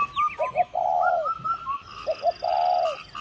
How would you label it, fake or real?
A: real